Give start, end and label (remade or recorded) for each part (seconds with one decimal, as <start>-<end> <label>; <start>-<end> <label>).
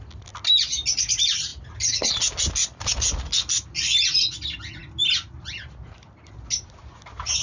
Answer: 0.0-7.4 recorded